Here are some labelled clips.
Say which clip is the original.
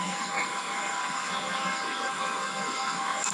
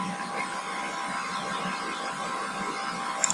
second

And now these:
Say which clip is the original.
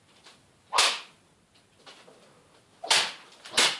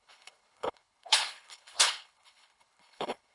first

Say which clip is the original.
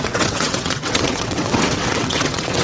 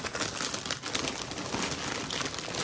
second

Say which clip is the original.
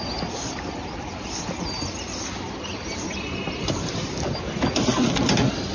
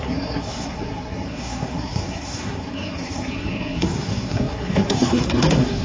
first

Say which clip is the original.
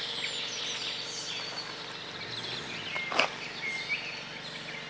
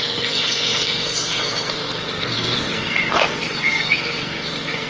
first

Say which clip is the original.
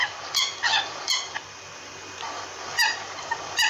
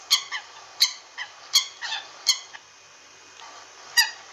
second